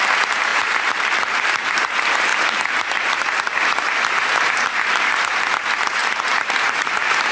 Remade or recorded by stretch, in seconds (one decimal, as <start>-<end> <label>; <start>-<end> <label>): 0.0-0.5 recorded; 0.5-1.8 remade; 1.8-2.3 recorded; 2.3-3.4 remade; 3.4-6.0 recorded; 6.0-7.3 remade